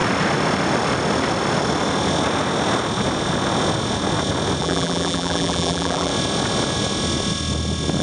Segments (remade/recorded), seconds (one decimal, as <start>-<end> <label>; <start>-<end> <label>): 0.0-4.6 recorded; 4.6-6.1 remade; 6.1-8.0 recorded